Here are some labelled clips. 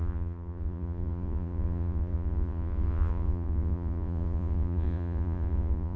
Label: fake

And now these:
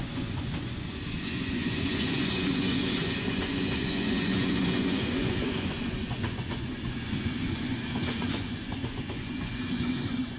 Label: fake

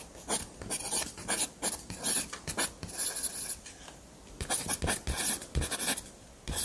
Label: real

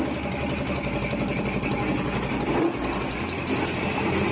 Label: real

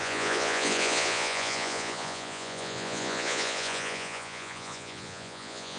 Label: fake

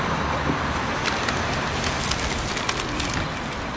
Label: real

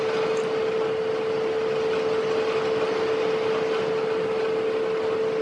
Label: real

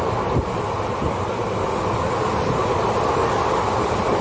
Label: real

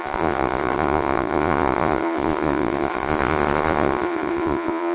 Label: fake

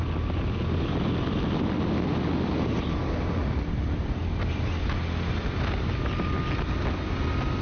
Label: real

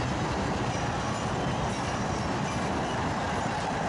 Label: real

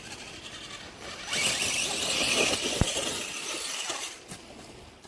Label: real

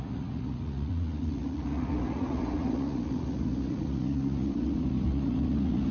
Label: fake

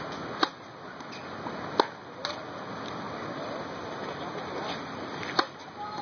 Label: real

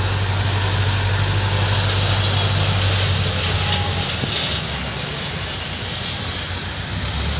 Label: real